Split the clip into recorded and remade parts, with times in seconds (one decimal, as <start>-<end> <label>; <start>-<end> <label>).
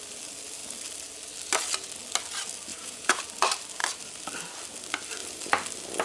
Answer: 0.0-2.7 recorded; 2.7-3.2 remade; 3.2-6.0 recorded